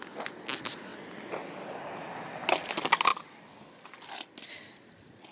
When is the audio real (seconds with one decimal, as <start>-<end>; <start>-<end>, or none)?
0.0-5.3